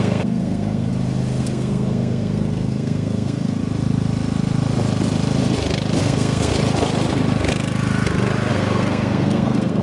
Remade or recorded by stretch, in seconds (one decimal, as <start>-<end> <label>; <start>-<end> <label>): 0.0-0.9 remade; 0.9-1.4 recorded; 1.4-3.6 remade; 3.6-6.0 recorded; 6.0-6.5 remade; 6.5-8.5 recorded; 8.5-9.8 remade